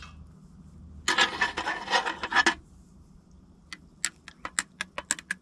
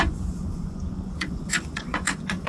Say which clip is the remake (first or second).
second